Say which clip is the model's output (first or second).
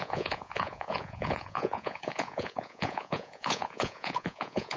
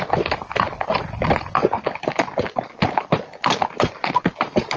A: first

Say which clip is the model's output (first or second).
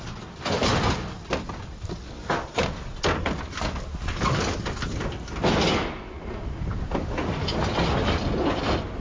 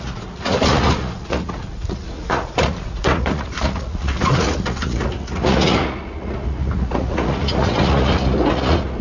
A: second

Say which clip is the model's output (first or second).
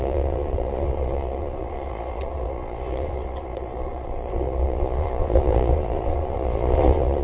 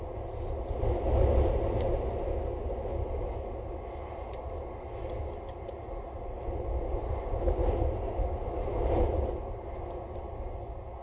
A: first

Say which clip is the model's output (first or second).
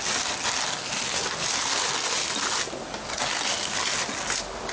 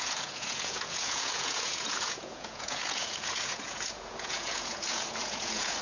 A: second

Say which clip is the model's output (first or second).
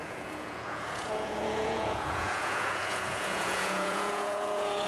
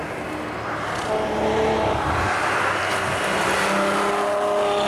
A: first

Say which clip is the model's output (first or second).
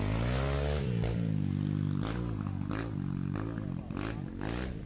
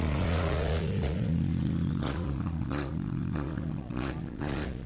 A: second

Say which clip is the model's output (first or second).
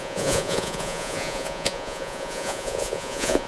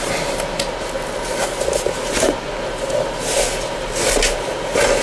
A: first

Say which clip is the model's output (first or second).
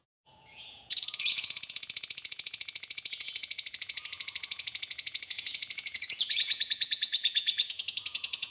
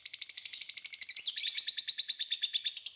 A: first